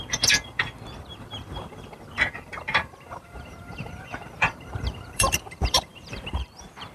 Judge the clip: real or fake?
fake